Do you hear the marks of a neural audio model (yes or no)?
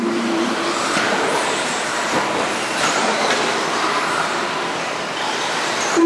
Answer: yes